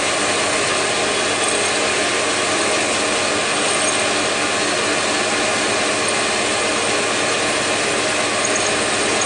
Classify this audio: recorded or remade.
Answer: recorded